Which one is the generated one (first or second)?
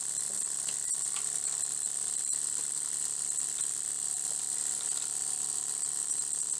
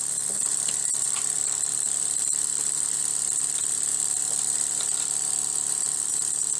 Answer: first